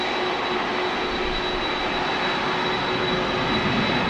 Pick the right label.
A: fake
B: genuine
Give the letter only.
B